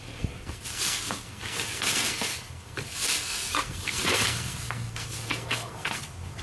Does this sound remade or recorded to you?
remade